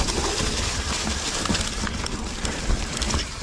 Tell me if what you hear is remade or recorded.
remade